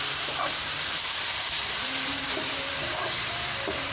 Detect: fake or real fake